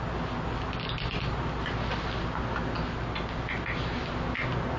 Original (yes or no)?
yes